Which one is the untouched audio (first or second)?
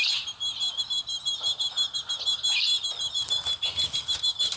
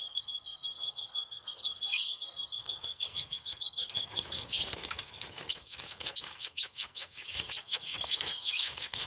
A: first